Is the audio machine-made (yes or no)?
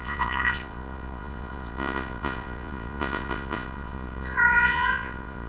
yes